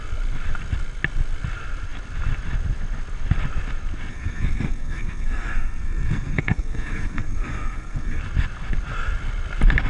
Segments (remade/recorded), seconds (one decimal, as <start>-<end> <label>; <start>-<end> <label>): 0.0-4.1 recorded; 4.1-8.2 remade; 8.2-9.9 recorded